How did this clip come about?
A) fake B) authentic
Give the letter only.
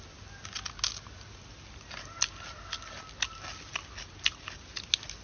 B